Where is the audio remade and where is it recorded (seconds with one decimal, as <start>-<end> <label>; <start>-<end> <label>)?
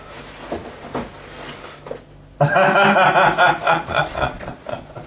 0.0-3.6 recorded; 3.6-5.1 remade